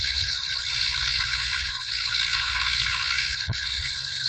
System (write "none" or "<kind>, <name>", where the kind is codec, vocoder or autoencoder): codec, HILCodec